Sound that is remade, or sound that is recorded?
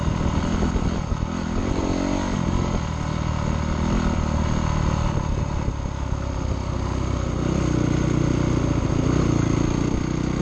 recorded